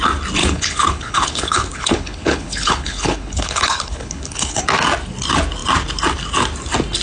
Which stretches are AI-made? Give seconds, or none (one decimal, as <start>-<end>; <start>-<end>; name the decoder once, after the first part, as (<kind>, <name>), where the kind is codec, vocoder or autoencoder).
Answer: 0.4-4.6 (codec, HILCodec)